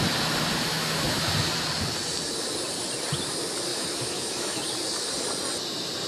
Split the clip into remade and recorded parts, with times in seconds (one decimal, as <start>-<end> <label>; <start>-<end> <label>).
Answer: 0.0-0.7 recorded; 0.7-1.2 remade; 1.2-3.7 recorded; 3.7-4.6 remade; 4.6-6.1 recorded